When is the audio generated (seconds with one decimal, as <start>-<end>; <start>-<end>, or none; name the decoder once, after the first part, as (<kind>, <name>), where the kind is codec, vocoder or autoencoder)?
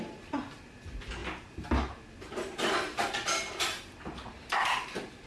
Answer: none